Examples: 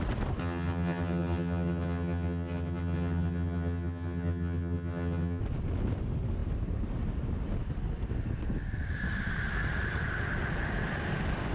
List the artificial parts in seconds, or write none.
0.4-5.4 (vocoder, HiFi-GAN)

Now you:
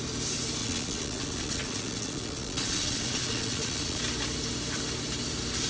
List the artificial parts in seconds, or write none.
0.6-4.0 (vocoder, Vocos)

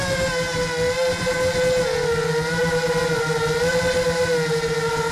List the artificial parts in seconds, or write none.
none

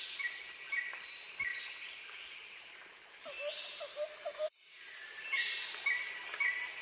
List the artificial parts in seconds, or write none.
none